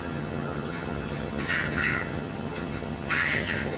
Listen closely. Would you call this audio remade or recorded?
remade